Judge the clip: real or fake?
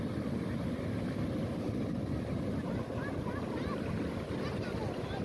real